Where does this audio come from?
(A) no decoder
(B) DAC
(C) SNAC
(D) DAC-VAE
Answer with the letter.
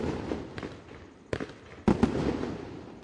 A